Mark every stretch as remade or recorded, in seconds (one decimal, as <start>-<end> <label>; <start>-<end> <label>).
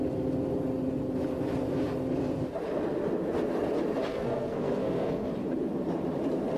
0.0-4.1 recorded; 4.1-5.3 remade; 5.3-6.6 recorded